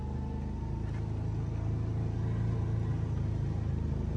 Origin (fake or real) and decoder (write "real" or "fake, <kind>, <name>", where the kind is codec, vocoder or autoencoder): real